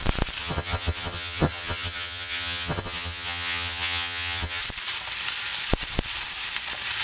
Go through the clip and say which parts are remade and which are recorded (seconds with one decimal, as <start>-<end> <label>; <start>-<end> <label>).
0.0-0.4 recorded; 0.4-4.6 remade; 4.6-7.0 recorded